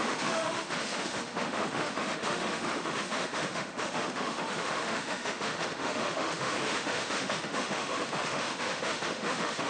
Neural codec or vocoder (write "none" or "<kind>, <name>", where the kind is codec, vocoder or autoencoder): autoencoder, DAC-VAE